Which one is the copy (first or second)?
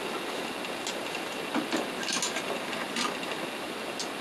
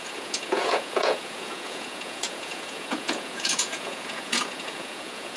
second